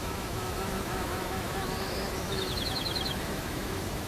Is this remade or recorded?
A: remade